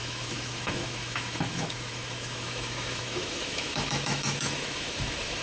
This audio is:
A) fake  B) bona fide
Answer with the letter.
A